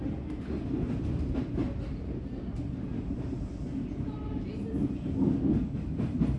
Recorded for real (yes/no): yes